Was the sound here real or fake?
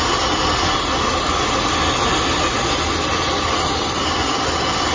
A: real